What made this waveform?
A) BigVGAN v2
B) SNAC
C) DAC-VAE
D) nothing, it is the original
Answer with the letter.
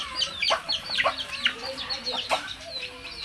A